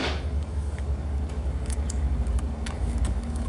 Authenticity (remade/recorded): remade